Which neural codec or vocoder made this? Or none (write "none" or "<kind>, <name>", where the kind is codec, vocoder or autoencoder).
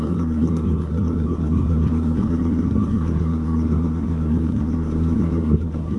codec, SNAC